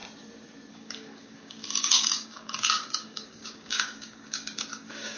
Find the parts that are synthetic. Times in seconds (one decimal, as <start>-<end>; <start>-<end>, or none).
0.7-5.2